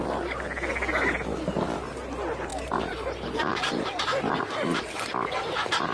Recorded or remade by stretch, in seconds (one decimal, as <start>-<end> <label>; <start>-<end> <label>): 0.0-2.5 recorded; 2.5-4.4 remade; 4.4-5.9 recorded